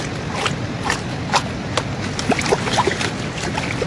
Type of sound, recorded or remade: recorded